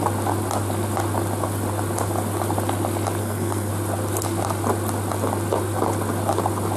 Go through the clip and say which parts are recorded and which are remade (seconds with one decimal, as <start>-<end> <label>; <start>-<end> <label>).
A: 0.0-3.2 recorded; 3.2-3.7 remade; 3.7-6.8 recorded